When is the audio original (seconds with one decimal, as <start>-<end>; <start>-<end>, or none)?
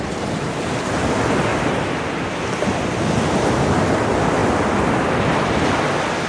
0.0-6.3